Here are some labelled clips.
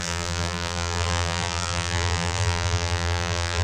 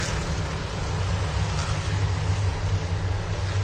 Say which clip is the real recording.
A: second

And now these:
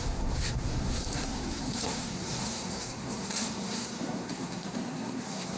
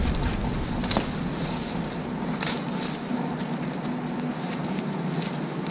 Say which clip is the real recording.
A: second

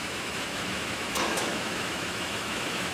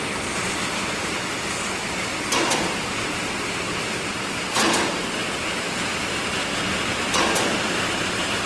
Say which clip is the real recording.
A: second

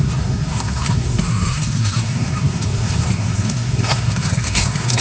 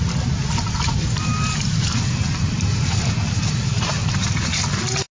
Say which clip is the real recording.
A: second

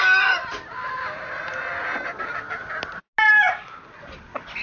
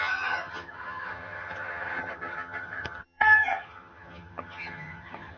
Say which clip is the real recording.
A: first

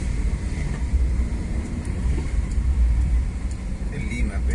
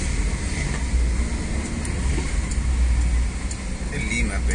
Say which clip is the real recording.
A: second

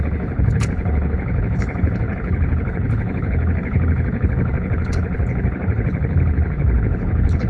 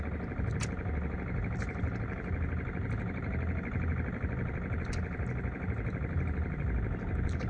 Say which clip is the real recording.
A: second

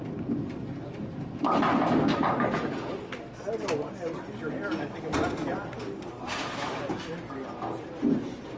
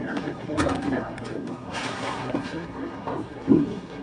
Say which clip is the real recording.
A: first